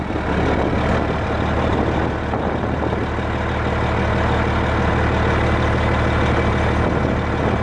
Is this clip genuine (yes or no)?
yes